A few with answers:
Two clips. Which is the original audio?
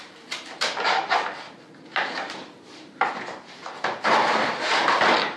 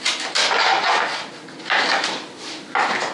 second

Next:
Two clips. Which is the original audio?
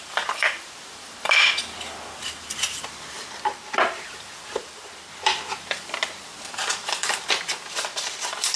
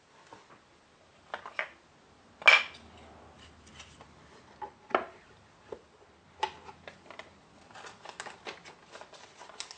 second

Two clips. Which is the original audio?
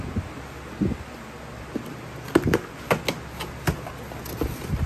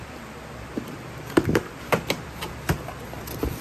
first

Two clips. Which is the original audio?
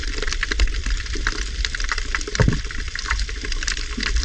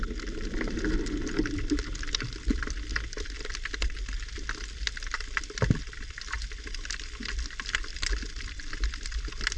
second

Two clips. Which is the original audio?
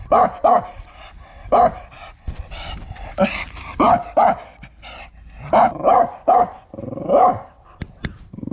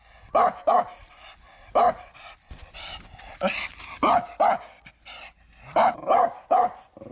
second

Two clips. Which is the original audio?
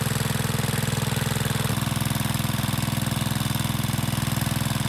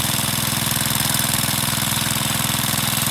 first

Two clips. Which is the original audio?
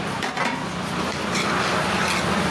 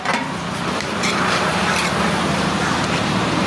first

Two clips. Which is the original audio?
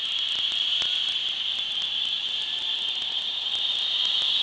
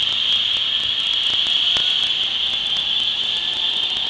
second